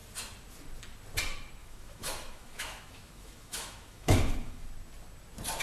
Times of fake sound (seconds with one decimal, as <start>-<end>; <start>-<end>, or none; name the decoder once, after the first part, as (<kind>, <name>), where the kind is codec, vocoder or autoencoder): 1.6-4.7 (autoencoder, DAC-VAE)